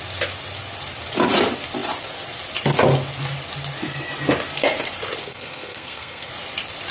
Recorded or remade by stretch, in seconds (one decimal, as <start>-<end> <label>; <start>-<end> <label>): 0.0-5.2 recorded; 5.2-6.3 remade; 6.3-6.9 recorded